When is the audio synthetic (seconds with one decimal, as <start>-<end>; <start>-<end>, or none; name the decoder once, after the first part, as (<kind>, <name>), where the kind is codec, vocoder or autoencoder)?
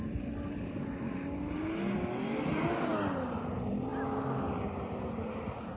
none